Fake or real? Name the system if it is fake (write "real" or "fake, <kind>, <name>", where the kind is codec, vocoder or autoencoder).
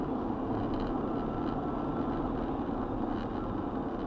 real